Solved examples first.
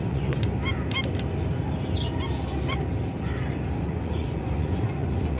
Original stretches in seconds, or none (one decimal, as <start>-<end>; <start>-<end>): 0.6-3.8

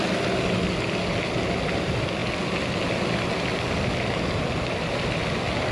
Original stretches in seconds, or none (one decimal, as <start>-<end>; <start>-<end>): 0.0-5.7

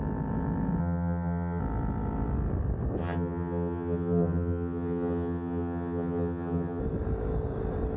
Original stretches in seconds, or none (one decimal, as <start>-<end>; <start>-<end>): 0.0-0.8; 1.6-3.0; 6.8-8.0

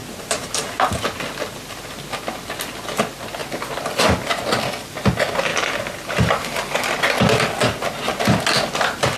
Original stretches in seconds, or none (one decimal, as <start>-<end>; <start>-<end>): 0.9-5.5; 7.0-9.2

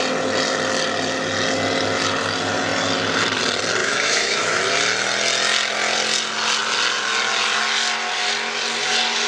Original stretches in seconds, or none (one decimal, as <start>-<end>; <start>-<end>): 0.0-3.8; 4.6-9.3

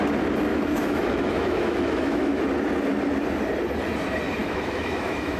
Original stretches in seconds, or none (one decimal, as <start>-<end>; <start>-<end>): 0.0-0.5; 2.4-4.4

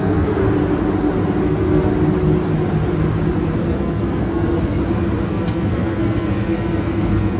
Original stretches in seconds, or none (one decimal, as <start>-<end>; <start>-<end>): 0.4-1.4; 1.9-3.6; 4.8-5.3